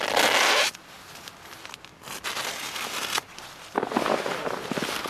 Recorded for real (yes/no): yes